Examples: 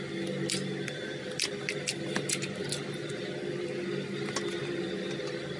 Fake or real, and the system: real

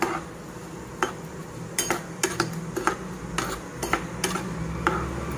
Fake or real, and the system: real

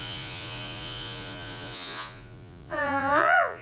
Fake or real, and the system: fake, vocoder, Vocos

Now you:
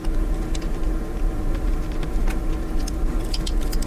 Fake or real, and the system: real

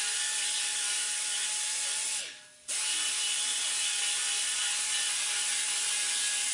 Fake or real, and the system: real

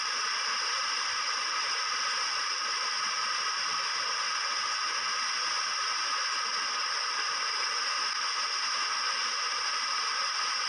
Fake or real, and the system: real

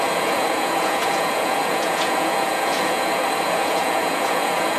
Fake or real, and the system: fake, vocoder, Vocos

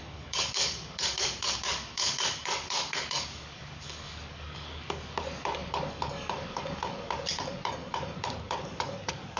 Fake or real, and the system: fake, codec, DAC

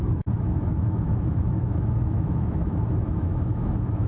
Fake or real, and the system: fake, autoencoder, DAC-VAE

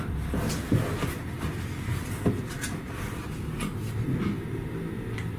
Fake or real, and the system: real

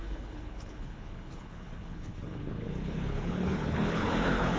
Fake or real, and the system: fake, codec, HILCodec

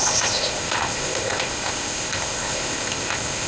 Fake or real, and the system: fake, codec, ZipCodec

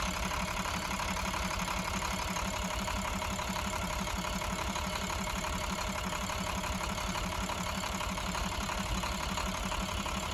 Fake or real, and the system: fake, vocoder, BigVGAN v2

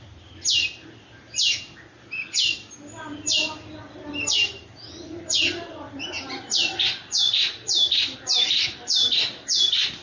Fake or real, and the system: real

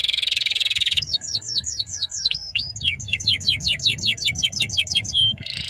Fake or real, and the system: fake, codec, SNAC